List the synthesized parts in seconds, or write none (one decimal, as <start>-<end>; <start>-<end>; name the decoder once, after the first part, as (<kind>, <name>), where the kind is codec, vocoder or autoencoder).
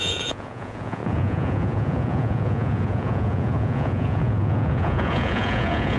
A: 0.0-6.0 (vocoder, Vocos)